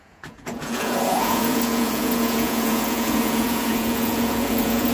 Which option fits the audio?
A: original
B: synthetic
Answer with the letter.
B